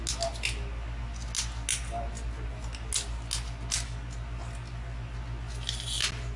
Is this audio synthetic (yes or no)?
no